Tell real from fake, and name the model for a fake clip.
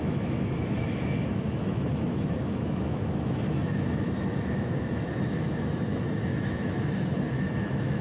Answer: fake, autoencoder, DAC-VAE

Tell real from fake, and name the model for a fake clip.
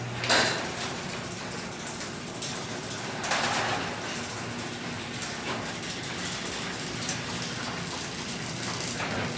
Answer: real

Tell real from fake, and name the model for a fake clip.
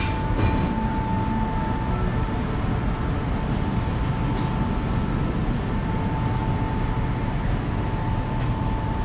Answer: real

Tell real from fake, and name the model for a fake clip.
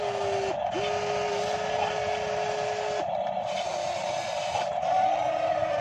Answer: real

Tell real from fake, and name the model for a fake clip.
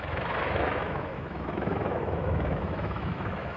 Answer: fake, autoencoder, DAC-VAE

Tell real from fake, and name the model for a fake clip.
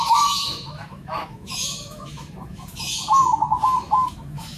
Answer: fake, autoencoder, DAC-VAE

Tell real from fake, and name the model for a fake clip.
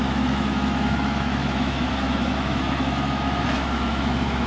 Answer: fake, autoencoder, DAC-VAE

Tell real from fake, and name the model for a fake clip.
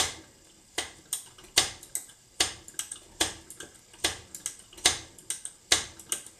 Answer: real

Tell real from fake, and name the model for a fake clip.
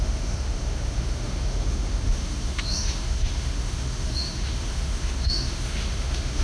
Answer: fake, autoencoder, DAC-VAE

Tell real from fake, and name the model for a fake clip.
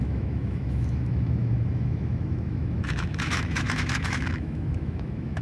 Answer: fake, autoencoder, DAC-VAE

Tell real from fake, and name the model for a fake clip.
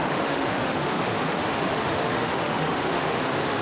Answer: fake, autoencoder, DAC-VAE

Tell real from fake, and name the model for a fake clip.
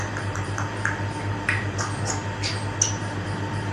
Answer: real